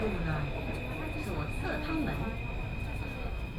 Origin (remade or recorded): recorded